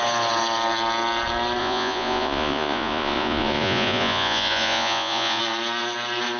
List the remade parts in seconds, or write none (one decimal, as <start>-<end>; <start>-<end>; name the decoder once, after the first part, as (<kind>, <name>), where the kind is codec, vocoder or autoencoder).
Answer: 1.6-5.4 (vocoder, Vocos)